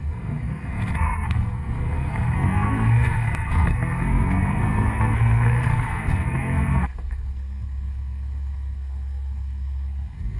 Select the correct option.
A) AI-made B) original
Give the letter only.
A